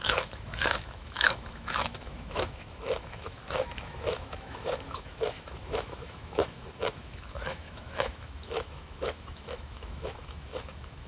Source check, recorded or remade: remade